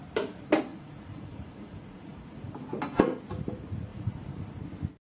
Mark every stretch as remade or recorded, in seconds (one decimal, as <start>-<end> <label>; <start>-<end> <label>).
0.0-0.7 recorded; 0.7-2.5 remade; 2.5-3.9 recorded; 3.9-4.6 remade; 4.6-5.0 recorded

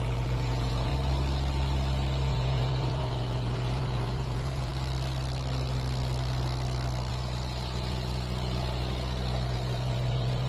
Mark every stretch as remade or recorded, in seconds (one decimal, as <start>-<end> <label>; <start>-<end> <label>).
0.0-0.9 remade; 0.9-2.3 recorded; 2.3-4.7 remade; 4.7-7.1 recorded; 7.1-10.5 remade

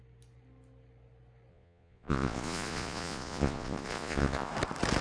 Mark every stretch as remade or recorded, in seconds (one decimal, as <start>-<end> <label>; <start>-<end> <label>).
0.0-1.5 recorded; 1.5-4.5 remade; 4.5-5.0 recorded

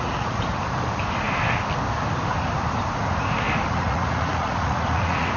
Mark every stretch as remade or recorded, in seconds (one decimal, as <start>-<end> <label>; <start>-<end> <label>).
0.0-0.5 remade; 0.5-3.7 recorded; 3.7-5.4 remade

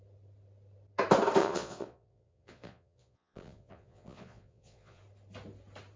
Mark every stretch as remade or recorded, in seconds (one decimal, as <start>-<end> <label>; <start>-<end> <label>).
0.0-1.4 recorded; 1.4-5.0 remade; 5.0-6.0 recorded

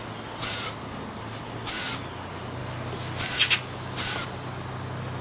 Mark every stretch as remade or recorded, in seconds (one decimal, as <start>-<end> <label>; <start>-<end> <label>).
0.0-5.2 recorded

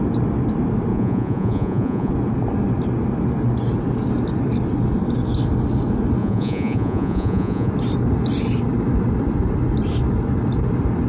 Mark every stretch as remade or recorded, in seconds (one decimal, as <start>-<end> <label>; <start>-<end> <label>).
0.0-0.9 recorded; 0.9-2.1 remade; 2.1-6.2 recorded; 6.2-7.7 remade; 7.7-11.1 recorded